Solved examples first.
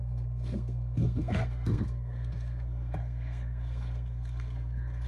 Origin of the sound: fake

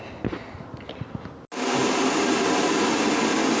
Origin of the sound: real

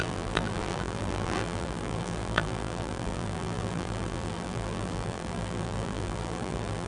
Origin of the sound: fake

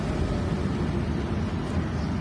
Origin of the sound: real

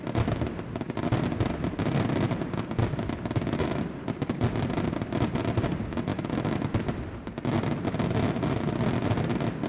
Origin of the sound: real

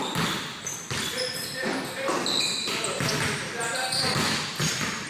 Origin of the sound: real